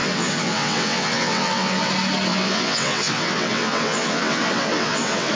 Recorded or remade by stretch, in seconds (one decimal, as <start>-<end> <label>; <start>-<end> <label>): 0.0-1.9 remade; 1.9-2.3 recorded; 2.3-5.3 remade